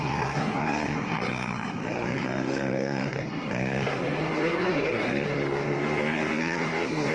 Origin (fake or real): fake